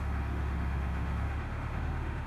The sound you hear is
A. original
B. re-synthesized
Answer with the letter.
B